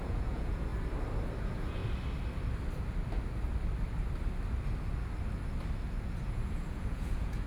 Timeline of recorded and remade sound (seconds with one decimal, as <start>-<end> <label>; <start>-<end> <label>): 0.0-0.7 remade; 0.7-1.4 recorded; 1.4-1.8 remade; 1.8-6.3 recorded; 6.3-7.5 remade